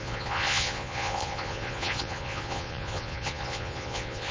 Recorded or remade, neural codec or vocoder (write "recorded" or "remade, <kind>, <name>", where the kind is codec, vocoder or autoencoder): remade, vocoder, Vocos